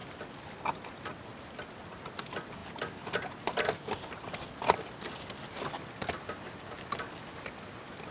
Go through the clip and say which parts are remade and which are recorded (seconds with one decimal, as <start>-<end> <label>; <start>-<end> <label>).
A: 0.0-8.1 recorded